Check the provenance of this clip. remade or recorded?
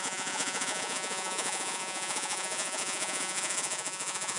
remade